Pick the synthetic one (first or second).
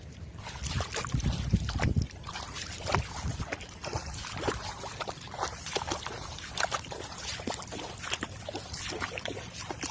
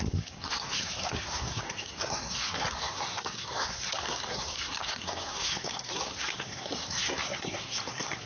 second